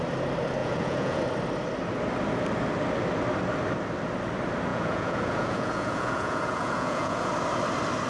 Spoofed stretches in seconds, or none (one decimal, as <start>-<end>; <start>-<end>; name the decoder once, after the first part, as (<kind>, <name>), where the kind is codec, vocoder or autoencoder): 0.6-1.2 (vocoder, Vocos); 4.7-7.3